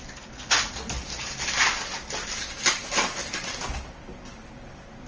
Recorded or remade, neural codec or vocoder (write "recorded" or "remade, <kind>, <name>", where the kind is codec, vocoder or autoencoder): recorded